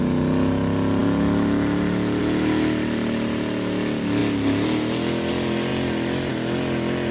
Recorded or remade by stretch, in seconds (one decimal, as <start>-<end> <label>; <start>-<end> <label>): 0.0-7.1 recorded